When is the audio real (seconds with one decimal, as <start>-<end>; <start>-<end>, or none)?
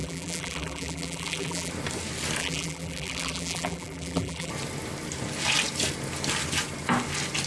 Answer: 1.7-2.4; 4.5-7.5